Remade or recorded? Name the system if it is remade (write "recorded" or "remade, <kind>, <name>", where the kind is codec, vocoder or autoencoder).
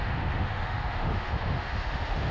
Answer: remade, autoencoder, DAC-VAE